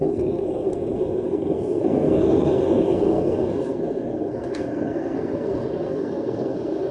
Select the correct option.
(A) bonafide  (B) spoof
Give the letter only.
B